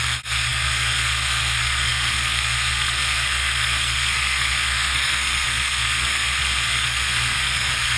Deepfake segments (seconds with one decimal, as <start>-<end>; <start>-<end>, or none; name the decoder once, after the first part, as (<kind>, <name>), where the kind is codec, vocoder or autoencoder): 0.0-8.0 (codec, SNAC)